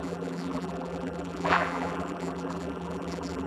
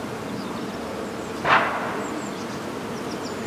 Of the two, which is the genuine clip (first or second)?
second